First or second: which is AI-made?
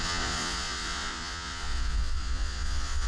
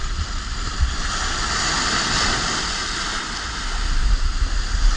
first